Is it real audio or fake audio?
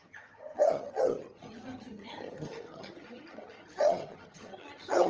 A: fake